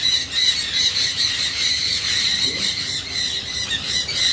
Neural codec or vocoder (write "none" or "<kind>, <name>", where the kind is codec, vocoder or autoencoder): vocoder, BigVGAN v2